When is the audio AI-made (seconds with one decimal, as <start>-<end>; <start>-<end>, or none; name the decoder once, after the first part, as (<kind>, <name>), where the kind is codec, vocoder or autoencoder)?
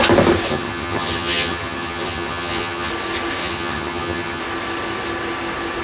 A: 0.5-2.9 (vocoder, HiFi-GAN); 3.4-4.4